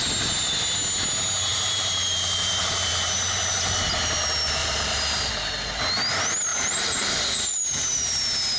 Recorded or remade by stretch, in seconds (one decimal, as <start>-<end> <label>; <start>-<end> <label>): 0.0-1.5 recorded; 1.5-3.8 remade; 3.8-4.6 recorded; 4.6-5.3 remade; 5.3-6.5 recorded; 6.5-8.2 remade; 8.2-8.6 recorded